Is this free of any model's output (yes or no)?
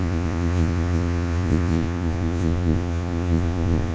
no